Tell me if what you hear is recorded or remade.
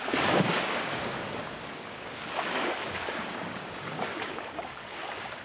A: remade